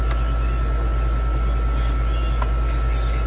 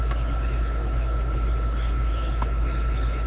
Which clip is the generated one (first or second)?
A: second